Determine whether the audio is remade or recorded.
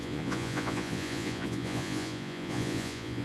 remade